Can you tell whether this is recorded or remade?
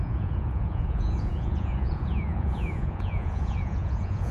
remade